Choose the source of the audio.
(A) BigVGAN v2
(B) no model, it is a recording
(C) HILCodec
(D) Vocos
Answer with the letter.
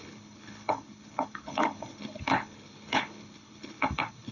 C